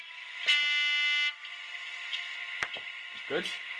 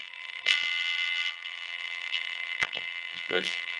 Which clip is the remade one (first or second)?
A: second